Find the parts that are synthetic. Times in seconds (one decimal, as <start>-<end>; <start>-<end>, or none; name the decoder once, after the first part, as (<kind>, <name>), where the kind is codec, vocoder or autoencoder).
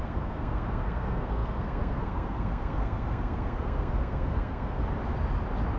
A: 0.0-4.8 (codec, SNAC)